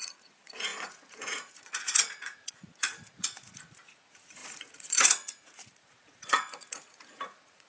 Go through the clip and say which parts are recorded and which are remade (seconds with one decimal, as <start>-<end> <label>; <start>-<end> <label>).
0.0-7.7 remade